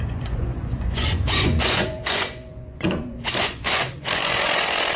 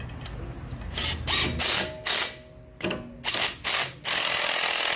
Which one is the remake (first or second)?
first